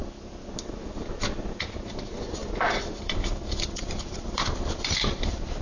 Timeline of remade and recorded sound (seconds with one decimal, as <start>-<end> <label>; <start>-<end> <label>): 0.0-1.9 recorded; 1.9-2.4 remade; 2.4-3.5 recorded; 3.5-5.6 remade